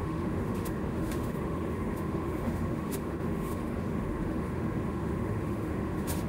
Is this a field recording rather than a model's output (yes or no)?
no